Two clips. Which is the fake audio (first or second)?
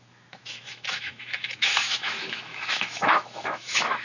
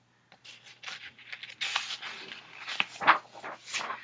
first